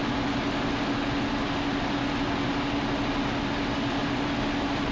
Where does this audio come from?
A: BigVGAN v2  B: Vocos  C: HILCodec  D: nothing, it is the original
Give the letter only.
D